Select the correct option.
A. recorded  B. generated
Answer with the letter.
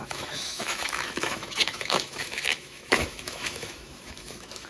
B